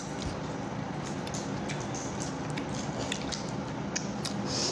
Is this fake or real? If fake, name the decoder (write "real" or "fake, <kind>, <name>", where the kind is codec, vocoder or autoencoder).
real